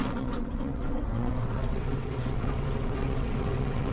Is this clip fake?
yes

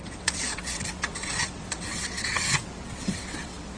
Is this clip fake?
yes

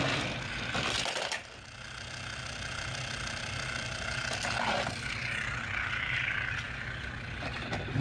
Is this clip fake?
no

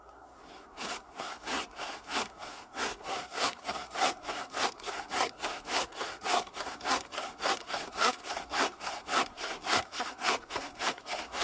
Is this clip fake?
yes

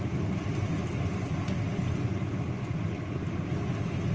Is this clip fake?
no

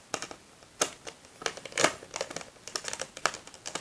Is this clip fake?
no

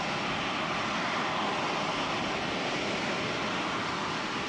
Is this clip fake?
no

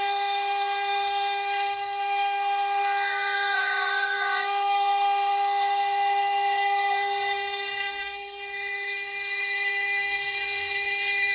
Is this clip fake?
yes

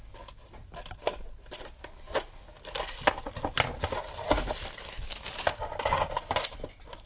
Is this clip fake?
no